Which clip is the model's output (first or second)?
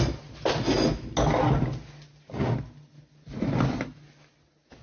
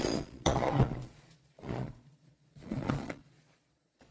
second